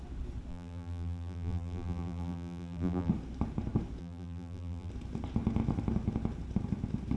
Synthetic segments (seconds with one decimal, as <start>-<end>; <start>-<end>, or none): 0.5-3.1; 4.0-4.9

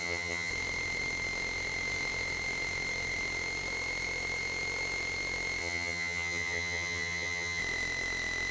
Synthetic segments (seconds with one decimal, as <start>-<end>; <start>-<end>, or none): 0.0-0.5; 5.6-7.6

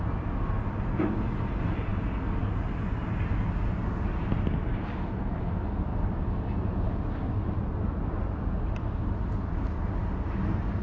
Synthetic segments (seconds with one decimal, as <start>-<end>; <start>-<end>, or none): none